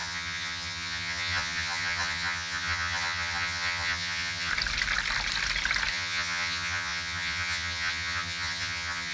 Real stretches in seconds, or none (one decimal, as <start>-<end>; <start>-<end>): 4.5-5.9